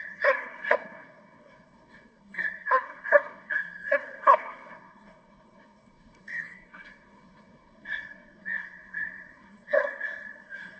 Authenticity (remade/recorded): remade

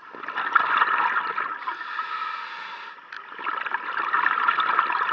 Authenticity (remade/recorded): recorded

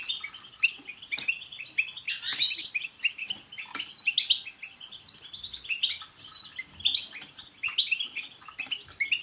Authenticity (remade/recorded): recorded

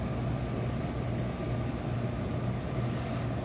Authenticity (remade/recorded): recorded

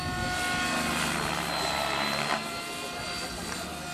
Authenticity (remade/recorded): recorded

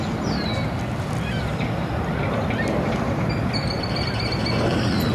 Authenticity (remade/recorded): recorded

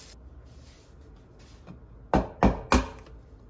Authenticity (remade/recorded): recorded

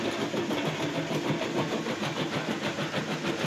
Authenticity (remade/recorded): recorded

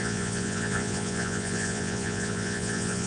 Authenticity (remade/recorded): remade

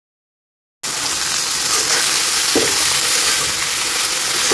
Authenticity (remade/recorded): recorded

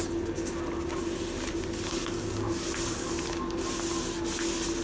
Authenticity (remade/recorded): recorded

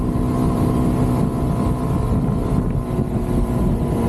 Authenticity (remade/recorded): recorded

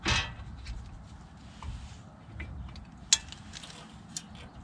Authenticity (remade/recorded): recorded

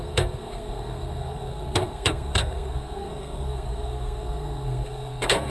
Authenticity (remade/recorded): remade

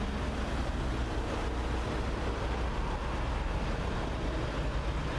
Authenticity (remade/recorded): recorded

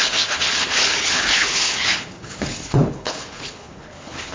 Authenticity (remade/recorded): remade